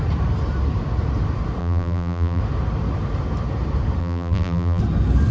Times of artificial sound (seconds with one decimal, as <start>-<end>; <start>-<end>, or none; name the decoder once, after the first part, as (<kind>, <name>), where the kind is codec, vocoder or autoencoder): 1.6-2.4 (vocoder, BigVGAN v2); 4.0-4.8